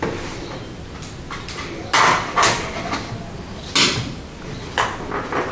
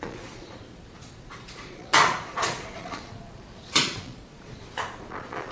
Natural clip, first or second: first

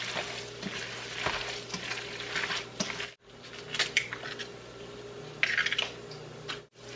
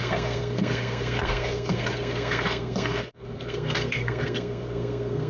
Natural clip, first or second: first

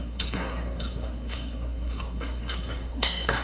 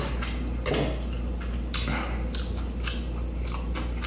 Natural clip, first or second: second